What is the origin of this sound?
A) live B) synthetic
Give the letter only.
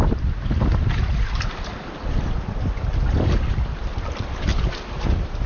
A